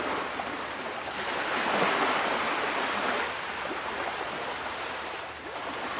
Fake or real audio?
real